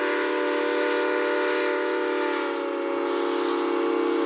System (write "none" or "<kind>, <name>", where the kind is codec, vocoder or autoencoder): none